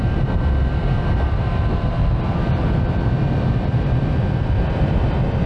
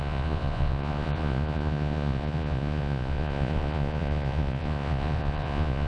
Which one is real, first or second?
first